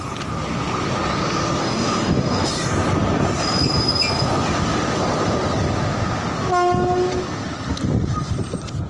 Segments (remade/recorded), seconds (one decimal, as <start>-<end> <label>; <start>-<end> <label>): 0.0-1.6 recorded; 1.6-2.5 remade; 2.5-8.9 recorded